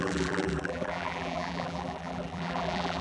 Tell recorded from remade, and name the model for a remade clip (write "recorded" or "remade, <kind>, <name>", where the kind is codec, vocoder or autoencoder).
remade, vocoder, BigVGAN v2